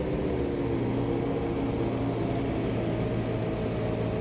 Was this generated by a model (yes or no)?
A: no